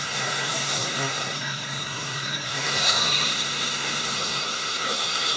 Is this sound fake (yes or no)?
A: yes